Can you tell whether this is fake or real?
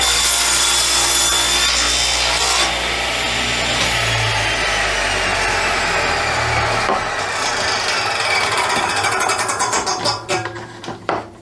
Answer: real